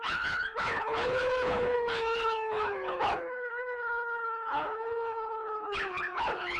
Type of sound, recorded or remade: remade